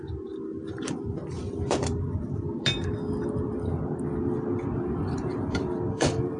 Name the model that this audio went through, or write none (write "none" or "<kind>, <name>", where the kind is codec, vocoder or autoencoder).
vocoder, BigVGAN v2